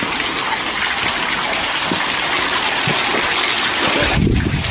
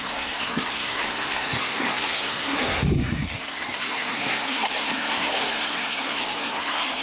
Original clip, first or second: first